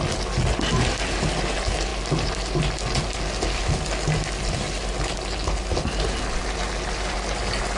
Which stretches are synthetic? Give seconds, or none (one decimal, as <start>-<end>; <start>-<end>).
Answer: none